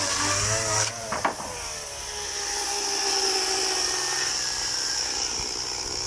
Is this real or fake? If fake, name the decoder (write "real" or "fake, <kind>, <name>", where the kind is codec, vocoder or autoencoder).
real